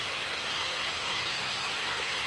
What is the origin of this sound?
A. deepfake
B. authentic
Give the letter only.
A